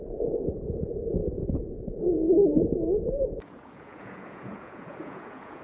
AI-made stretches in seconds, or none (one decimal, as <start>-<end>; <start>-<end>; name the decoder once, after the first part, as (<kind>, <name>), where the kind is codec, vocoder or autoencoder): 0.0-5.6 (vocoder, Vocos)